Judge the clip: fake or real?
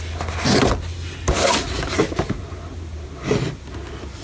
real